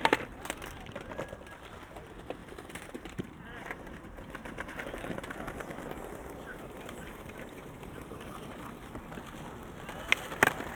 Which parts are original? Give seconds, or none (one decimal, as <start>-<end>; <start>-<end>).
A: 0.0-2.4; 4.9-6.5; 8.9-10.7